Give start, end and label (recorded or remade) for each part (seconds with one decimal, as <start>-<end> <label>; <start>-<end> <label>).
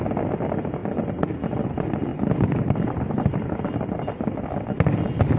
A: 0.0-2.1 recorded; 2.1-5.0 remade; 5.0-5.4 recorded